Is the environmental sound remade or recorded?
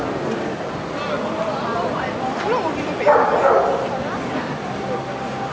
recorded